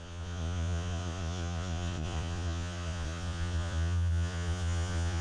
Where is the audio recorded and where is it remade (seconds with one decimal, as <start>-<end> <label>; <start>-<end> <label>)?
0.0-5.2 remade